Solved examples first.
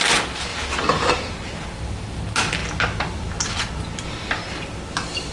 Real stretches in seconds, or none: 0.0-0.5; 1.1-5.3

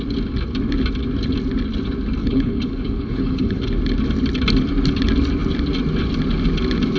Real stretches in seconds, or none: 0.0-2.2; 3.7-7.0

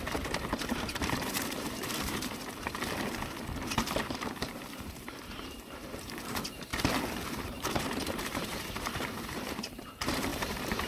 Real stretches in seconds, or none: 6.7-7.3

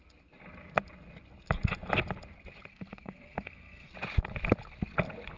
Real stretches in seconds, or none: 0.0-2.7; 3.9-5.4

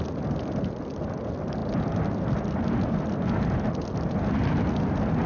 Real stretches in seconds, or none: 0.0-5.3